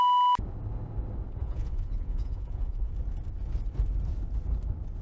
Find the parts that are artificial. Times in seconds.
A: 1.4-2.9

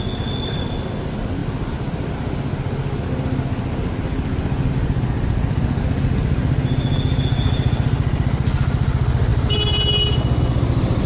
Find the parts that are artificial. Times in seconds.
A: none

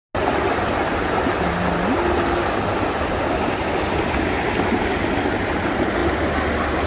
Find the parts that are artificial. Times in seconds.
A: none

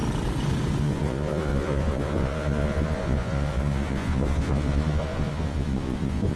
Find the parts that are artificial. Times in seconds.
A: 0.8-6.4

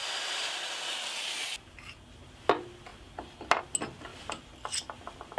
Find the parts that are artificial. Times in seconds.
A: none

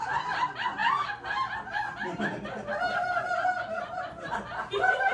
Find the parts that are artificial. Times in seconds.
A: none